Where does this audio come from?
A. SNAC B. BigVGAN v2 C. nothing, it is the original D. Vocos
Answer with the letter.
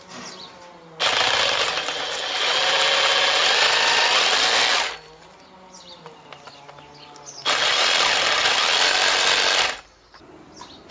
C